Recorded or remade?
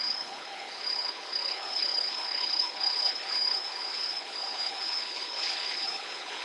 remade